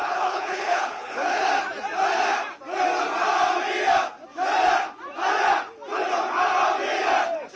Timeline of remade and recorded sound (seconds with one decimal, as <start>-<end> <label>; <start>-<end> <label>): 0.0-1.5 remade; 1.5-7.6 recorded